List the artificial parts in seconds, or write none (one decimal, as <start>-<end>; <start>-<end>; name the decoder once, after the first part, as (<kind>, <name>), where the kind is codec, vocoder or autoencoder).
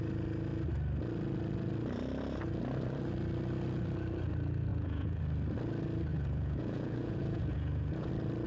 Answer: 4.7-5.2 (vocoder, Vocos); 6.1-8.1